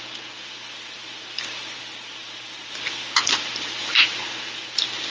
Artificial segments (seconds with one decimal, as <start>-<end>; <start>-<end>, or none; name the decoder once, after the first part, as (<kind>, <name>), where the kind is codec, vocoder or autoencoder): none